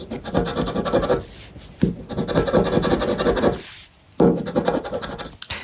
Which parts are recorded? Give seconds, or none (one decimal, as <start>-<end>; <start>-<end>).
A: 0.0-5.6